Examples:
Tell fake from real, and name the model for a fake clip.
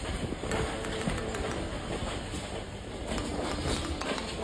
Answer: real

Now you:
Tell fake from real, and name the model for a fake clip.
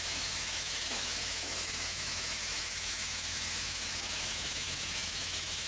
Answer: fake, autoencoder, DAC-VAE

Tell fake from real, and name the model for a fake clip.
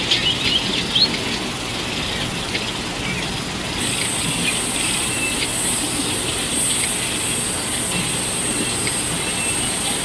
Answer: real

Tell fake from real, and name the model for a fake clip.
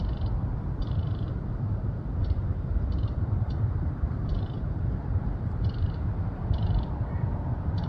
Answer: fake, vocoder, BigVGAN v2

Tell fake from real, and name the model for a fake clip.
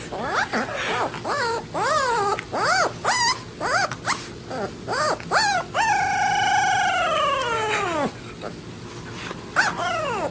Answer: real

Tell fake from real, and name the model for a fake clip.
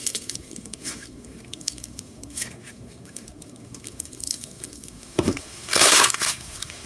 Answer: fake, codec, SNAC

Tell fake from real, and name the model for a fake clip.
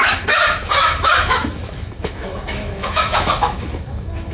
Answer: fake, autoencoder, DAC-VAE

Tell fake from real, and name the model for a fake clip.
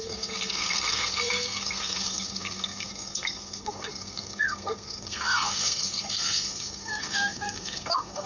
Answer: fake, codec, SNAC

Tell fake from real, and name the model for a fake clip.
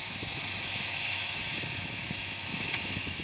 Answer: fake, autoencoder, DAC-VAE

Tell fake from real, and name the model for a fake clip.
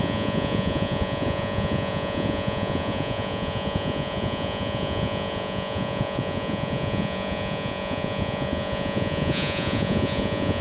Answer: fake, vocoder, Vocos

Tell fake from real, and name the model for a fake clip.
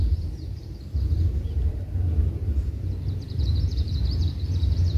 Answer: fake, vocoder, BigVGAN v2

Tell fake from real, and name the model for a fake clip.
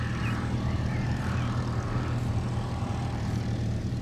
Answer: fake, vocoder, BigVGAN v2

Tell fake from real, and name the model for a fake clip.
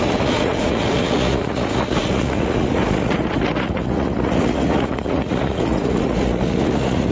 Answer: fake, vocoder, Vocos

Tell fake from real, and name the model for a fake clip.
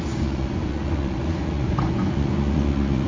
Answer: fake, vocoder, Vocos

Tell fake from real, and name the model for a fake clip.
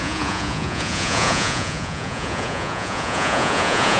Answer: fake, vocoder, Vocos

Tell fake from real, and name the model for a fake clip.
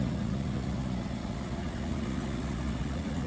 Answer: fake, vocoder, Vocos